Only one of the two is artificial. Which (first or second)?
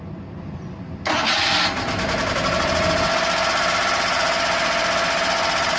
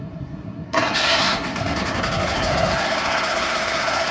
second